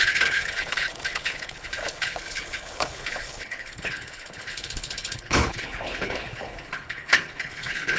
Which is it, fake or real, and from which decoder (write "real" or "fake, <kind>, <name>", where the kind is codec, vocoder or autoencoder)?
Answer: fake, codec, HILCodec